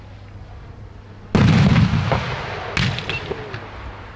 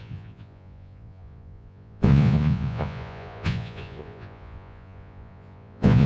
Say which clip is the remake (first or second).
second